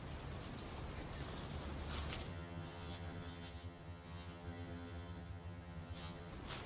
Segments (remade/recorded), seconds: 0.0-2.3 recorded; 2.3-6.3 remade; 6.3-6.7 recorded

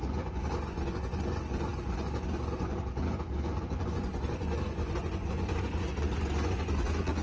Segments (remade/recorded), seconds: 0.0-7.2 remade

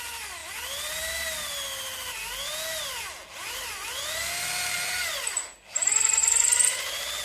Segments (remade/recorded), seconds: 0.0-7.2 recorded